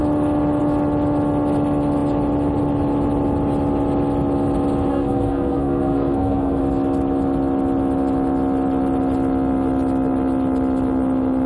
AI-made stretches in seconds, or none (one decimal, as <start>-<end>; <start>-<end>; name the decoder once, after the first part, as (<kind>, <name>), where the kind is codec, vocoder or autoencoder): 4.9-6.6 (codec, SNAC)